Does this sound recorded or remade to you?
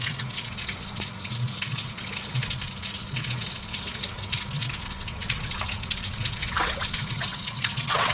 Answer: remade